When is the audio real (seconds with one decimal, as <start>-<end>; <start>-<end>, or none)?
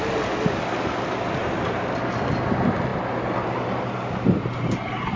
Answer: 0.0-5.2